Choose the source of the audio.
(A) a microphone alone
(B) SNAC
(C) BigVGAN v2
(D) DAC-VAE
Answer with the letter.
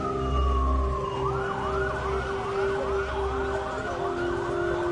A